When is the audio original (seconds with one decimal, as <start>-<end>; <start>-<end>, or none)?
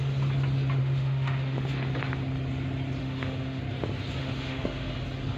0.0-0.8; 1.7-3.0; 3.6-4.2; 4.9-5.4